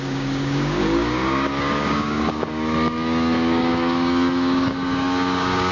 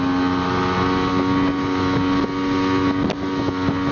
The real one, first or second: second